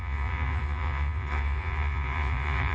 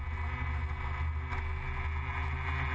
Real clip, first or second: second